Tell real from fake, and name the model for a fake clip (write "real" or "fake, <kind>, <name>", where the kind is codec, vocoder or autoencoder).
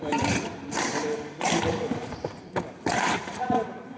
real